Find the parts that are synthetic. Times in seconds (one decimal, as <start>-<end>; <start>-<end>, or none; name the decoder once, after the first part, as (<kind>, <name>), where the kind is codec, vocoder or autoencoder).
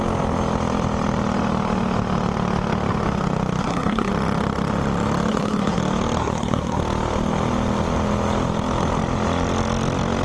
3.6-4.1 (codec, SNAC); 5.3-5.8; 6.2-6.8